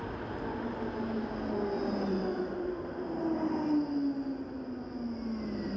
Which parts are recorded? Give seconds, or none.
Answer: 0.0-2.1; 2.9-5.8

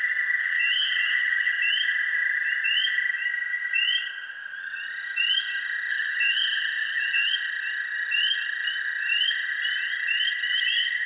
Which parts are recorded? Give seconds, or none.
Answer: 0.0-0.4; 1.7-5.9; 7.3-11.1

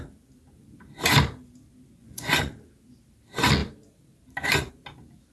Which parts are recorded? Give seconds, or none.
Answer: 0.0-2.0; 2.5-5.3

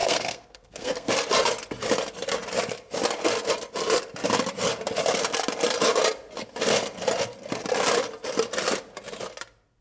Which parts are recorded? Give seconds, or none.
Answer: 1.1-9.8

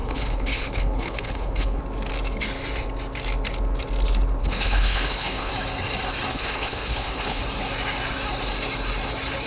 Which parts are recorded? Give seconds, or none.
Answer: 1.8-4.4; 5.5-6.3; 7.4-9.5

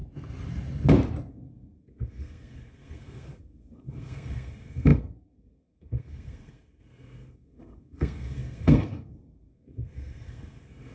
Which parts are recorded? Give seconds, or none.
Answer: 0.0-1.3

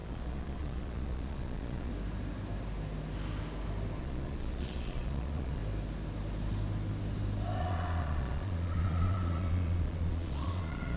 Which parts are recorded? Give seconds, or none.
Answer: 1.9-4.0; 5.6-7.6